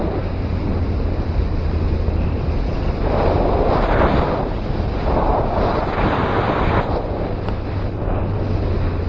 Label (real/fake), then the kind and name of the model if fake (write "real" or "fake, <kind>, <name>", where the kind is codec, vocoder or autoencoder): real